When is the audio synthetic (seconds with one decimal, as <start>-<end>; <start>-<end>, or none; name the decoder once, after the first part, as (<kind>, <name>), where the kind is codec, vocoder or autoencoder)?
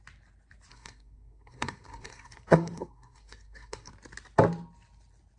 0.7-3.9 (codec, SNAC)